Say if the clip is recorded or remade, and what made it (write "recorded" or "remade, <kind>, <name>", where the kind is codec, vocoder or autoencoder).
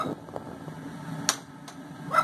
recorded